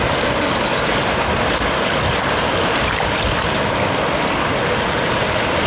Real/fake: fake